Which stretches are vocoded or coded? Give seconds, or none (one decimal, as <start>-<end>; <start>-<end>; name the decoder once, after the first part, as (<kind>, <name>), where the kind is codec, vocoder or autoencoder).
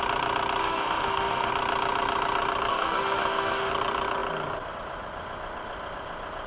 0.6-1.5 (autoencoder, DAC-VAE); 2.7-3.7